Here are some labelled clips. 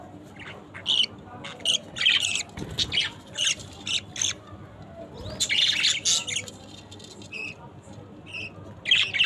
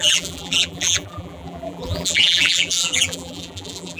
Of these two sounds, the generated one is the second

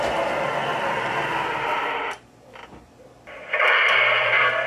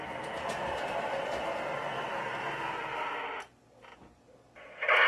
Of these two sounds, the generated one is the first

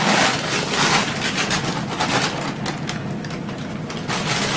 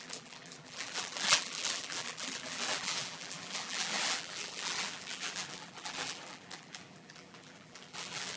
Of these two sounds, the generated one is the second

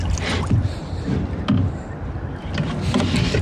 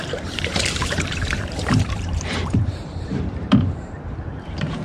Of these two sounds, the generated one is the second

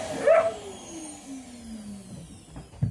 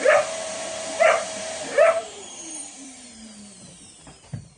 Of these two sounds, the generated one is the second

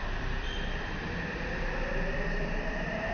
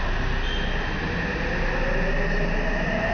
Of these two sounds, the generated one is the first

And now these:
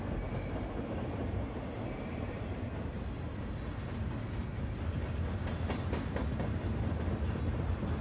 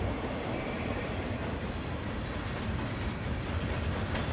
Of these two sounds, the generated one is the second